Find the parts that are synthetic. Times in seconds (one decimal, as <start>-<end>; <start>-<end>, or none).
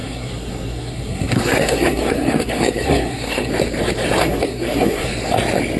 0.0-3.5; 4.2-5.1